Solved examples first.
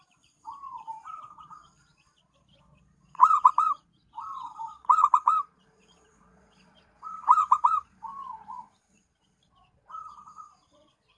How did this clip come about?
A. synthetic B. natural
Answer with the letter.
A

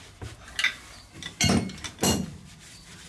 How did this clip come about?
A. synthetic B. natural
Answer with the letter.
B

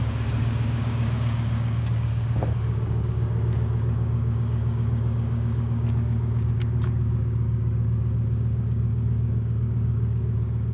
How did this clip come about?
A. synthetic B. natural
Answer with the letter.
A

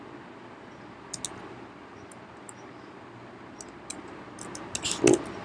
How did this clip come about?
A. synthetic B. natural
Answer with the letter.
B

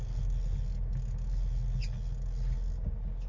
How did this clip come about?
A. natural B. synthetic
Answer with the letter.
A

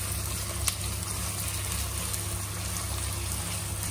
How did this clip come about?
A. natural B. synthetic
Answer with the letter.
A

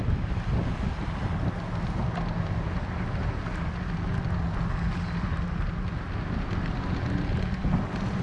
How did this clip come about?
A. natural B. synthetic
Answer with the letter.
A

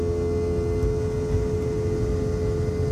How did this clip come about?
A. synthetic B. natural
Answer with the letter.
B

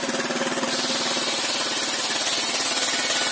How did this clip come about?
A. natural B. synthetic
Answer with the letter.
A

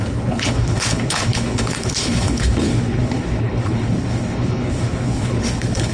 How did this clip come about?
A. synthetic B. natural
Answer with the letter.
A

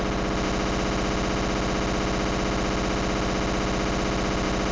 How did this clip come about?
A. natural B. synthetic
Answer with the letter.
A